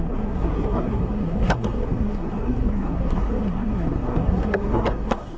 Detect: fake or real fake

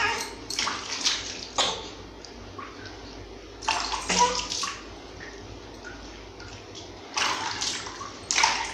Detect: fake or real real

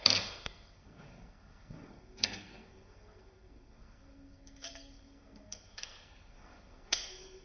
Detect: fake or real fake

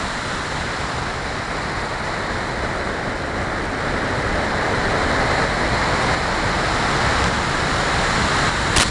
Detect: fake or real real